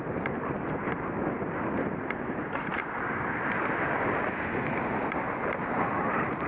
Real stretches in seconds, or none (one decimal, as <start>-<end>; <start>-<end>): 0.8-1.8; 2.7-6.0